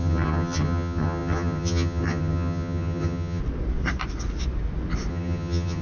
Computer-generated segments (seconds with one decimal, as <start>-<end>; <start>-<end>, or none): 0.0-3.4; 5.1-5.8